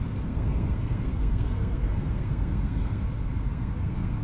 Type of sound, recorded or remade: remade